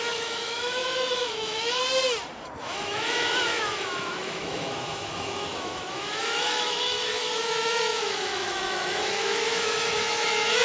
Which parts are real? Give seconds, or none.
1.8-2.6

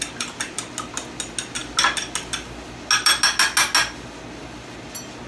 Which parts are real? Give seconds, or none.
0.0-5.3

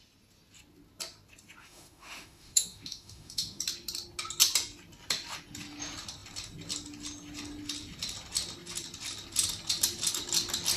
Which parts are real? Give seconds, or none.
0.0-1.6; 3.6-10.8